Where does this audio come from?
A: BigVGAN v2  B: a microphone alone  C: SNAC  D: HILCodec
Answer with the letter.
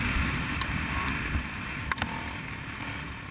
B